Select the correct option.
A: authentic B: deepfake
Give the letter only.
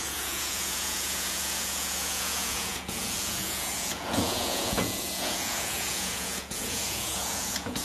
B